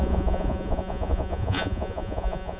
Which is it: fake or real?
fake